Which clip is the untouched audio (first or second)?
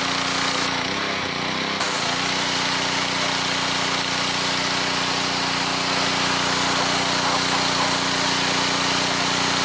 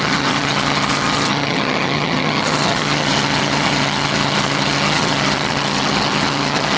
first